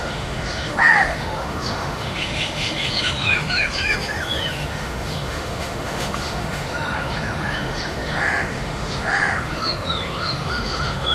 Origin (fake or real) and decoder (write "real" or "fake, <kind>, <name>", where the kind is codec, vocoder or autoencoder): fake, autoencoder, DAC-VAE